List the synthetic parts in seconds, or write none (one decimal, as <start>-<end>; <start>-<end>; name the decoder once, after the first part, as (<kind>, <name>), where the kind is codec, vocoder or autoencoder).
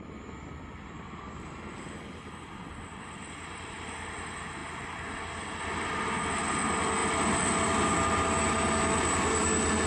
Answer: none